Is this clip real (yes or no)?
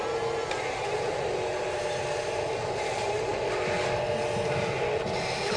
yes